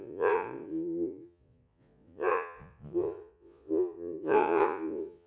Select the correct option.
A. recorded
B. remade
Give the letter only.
B